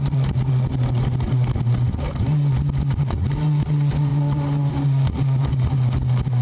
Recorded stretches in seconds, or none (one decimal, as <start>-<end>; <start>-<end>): 0.0-6.4